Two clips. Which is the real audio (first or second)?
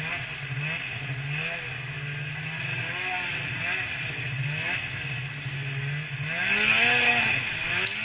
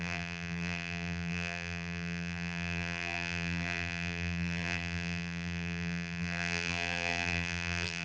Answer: first